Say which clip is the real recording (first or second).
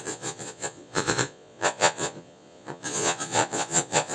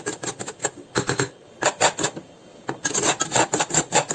second